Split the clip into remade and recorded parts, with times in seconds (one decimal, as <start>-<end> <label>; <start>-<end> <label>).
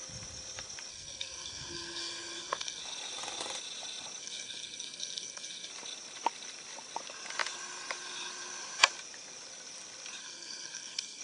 0.0-0.9 recorded; 0.9-2.8 remade; 2.8-4.2 recorded; 4.2-5.7 remade; 5.7-10.2 recorded; 10.2-11.2 remade